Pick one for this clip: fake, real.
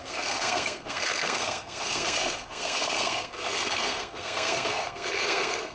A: fake